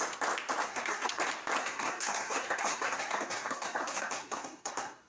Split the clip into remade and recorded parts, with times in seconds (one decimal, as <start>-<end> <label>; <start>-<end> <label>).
0.0-0.6 recorded; 0.6-1.2 remade; 1.2-1.6 recorded; 1.6-5.1 remade